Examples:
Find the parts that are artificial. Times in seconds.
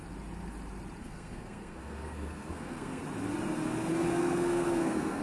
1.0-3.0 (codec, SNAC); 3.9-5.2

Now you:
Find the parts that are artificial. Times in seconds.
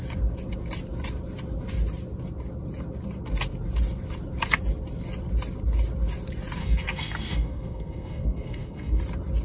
6.6-9.0 (codec, SNAC)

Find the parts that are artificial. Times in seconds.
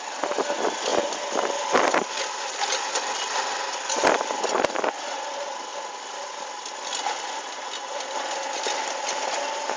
none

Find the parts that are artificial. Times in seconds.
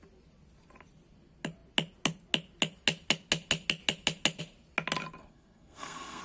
5.2-6.2 (codec, SNAC)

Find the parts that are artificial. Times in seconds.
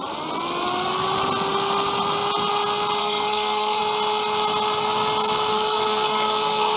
3.0-3.8 (codec, SNAC); 5.5-6.8